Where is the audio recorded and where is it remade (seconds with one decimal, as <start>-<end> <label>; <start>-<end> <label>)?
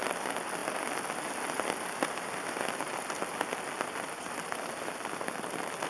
0.0-5.9 recorded